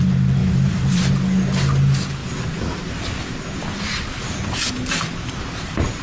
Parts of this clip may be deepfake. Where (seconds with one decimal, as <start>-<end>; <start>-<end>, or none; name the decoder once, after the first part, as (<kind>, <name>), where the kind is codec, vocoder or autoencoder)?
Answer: 0.4-1.1 (vocoder, BigVGAN v2)